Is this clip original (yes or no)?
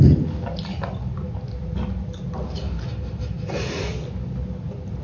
yes